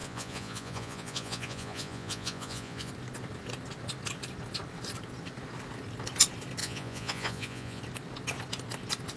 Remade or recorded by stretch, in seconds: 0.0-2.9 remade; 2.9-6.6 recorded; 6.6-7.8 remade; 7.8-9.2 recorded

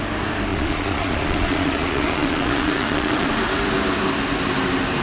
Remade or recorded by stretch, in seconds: 0.0-0.5 recorded; 0.5-3.3 remade; 3.3-5.0 recorded

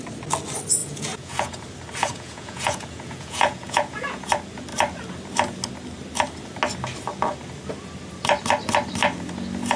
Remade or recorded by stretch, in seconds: 0.0-0.8 recorded; 0.8-1.6 remade; 1.6-2.0 recorded; 2.0-4.3 remade; 4.3-9.8 recorded